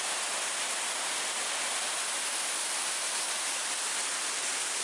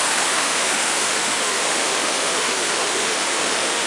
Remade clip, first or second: second